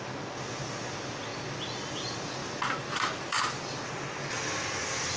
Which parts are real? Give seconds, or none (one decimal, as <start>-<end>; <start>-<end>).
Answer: 0.0-2.4; 3.9-5.2